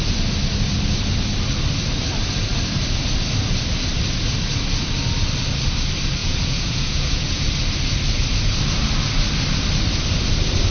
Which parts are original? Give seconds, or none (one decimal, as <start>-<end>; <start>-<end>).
0.0-6.2; 7.5-10.7